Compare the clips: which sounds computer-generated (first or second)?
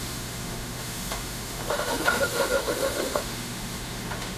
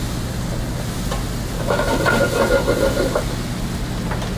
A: first